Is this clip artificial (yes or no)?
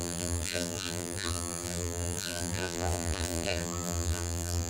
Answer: yes